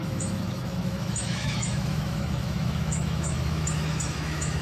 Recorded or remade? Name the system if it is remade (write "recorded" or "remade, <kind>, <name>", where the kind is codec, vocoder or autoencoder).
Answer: remade, autoencoder, DAC-VAE